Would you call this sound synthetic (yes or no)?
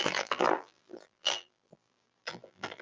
yes